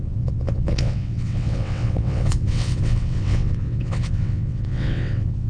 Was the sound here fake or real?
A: fake